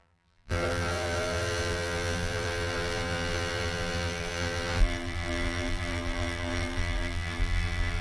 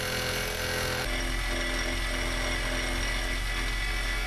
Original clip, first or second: second